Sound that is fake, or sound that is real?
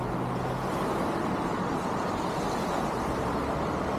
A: real